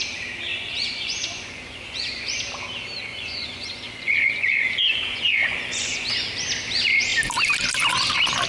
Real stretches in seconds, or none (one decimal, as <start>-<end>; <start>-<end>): 0.0-0.5; 2.4-3.1; 6.1-8.5